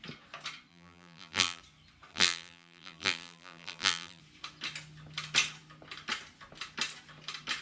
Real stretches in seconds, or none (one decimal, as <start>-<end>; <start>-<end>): 0.0-0.7; 1.6-2.1; 4.2-7.6